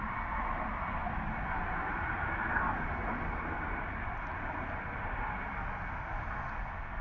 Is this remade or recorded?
recorded